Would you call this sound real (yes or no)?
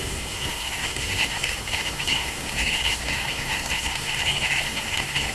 no